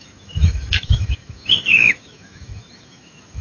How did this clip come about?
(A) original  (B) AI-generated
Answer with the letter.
B